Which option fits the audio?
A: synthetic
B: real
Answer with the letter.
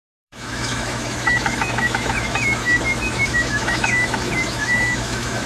A